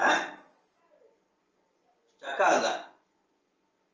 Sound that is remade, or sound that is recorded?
remade